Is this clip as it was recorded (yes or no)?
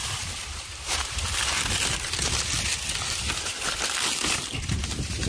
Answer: yes